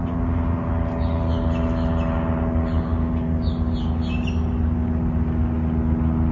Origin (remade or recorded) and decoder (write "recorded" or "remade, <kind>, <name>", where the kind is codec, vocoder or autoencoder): recorded